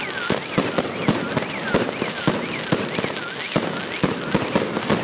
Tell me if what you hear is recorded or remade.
recorded